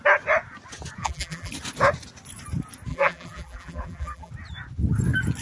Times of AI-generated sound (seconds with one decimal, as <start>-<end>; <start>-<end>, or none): 1.0-1.5; 2.9-4.3